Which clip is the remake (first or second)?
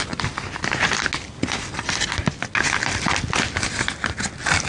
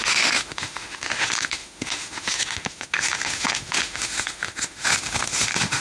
second